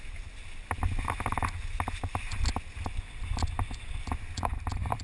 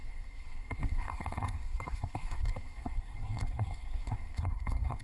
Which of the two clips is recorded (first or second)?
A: first